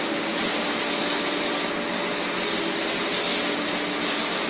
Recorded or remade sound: recorded